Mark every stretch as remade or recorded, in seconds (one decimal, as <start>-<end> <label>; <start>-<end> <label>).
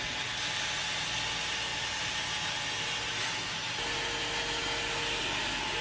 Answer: 0.0-5.8 recorded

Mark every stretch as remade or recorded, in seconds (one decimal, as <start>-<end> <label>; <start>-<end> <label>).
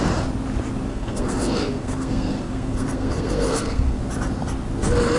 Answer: 0.0-0.9 recorded; 0.9-4.0 remade; 4.0-5.2 recorded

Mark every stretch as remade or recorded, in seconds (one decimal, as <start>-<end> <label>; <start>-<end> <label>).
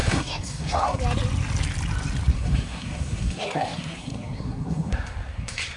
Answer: 0.0-1.0 remade; 1.0-2.3 recorded; 2.3-5.8 remade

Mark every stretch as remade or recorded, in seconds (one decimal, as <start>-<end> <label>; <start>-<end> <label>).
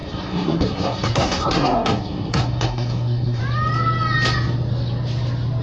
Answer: 0.0-3.4 remade; 3.4-5.6 recorded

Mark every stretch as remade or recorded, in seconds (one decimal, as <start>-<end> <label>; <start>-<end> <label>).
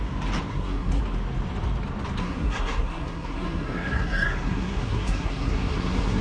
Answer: 0.0-0.5 recorded; 0.5-1.0 remade; 1.0-2.2 recorded; 2.2-6.2 remade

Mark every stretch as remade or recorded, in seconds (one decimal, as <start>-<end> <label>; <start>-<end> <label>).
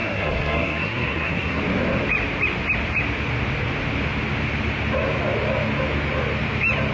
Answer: 0.0-1.6 remade; 1.6-6.9 recorded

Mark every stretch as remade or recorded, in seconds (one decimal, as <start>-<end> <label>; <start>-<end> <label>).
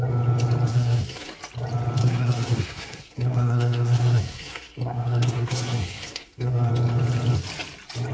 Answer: 0.0-0.7 recorded; 0.7-1.3 remade; 1.3-2.0 recorded; 2.0-6.7 remade; 6.7-8.1 recorded